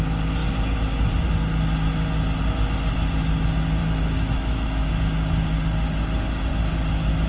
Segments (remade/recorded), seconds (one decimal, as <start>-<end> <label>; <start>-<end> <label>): 0.0-3.8 recorded; 3.8-4.9 remade; 4.9-7.3 recorded